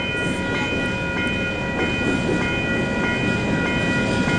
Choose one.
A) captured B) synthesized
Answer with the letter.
A